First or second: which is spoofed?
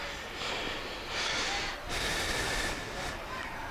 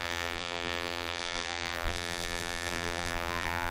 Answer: second